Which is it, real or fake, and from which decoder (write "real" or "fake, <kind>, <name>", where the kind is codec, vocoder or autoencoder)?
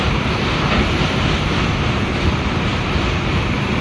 fake, vocoder, BigVGAN v2